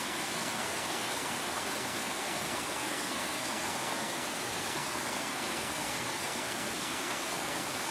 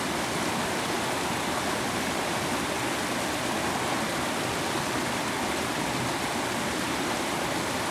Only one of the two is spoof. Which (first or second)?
first